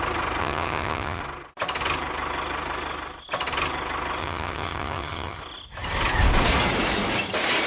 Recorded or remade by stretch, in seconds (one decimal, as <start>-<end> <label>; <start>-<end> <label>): 0.0-0.4 recorded; 0.4-1.2 remade; 1.2-4.2 recorded; 4.2-5.4 remade; 5.4-7.7 recorded